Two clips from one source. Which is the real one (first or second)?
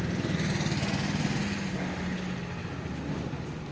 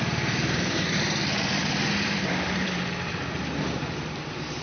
first